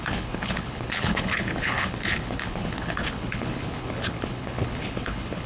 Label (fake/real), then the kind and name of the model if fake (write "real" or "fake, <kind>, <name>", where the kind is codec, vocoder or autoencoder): fake, codec, HILCodec